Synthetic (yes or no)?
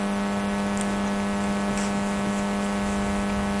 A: no